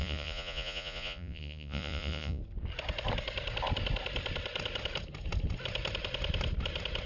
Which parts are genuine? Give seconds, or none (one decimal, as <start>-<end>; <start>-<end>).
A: 2.4-7.1